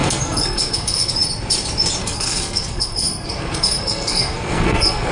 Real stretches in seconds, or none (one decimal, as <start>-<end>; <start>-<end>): 1.1-2.0